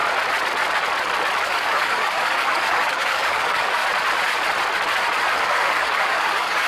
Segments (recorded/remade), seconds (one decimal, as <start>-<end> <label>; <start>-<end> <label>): 0.0-1.5 recorded; 1.5-3.8 remade; 3.8-5.4 recorded; 5.4-6.7 remade

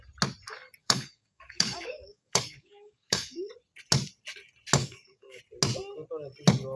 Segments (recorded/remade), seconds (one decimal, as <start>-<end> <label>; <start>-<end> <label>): 0.0-0.8 recorded; 0.8-3.5 remade; 3.5-4.8 recorded; 4.8-5.4 remade; 5.4-6.8 recorded